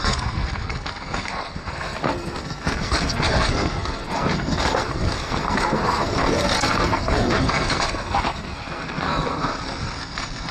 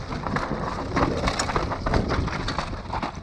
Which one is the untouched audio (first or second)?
second